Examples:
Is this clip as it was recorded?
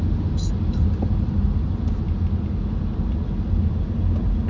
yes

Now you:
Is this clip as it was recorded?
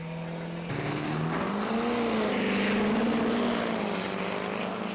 yes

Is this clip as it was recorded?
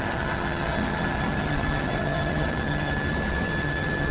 no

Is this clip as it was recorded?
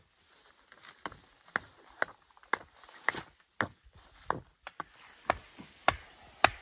yes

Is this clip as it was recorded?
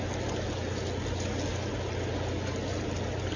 yes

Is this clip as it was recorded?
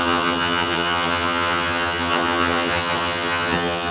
no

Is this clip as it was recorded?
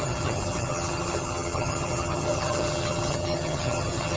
no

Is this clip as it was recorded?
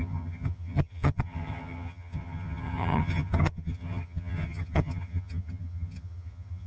no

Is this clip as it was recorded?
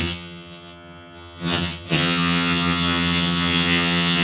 no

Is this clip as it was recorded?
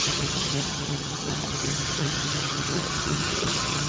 no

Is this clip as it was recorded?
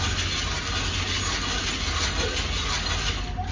yes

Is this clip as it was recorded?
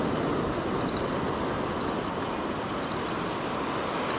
yes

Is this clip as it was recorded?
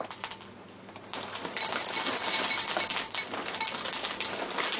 yes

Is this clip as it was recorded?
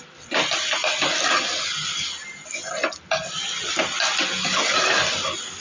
yes